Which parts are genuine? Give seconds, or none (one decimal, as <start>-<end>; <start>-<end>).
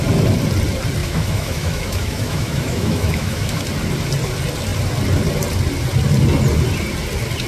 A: 0.0-1.0; 3.6-7.5